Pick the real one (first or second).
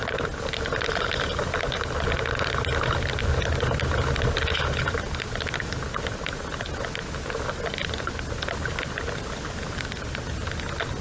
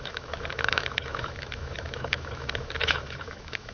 first